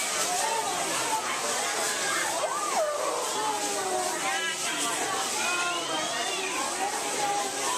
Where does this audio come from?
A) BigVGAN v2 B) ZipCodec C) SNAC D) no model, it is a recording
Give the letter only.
D